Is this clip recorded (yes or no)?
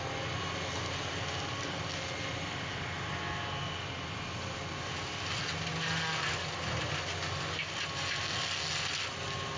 yes